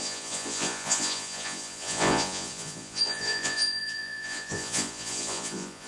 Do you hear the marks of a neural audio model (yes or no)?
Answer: yes